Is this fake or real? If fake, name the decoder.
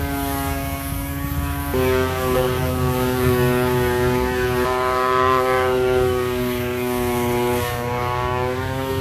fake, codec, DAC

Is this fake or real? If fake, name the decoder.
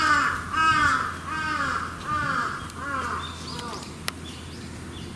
real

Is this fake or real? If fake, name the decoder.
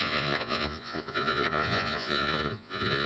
fake, vocoder, Vocos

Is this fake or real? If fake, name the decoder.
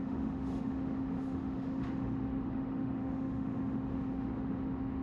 fake, autoencoder, DAC-VAE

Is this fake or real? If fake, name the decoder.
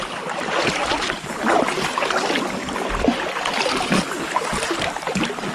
real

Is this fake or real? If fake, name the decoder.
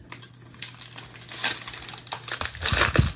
real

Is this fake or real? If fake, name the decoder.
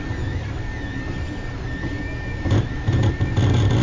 real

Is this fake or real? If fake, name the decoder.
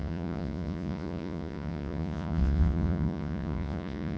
fake, vocoder, Vocos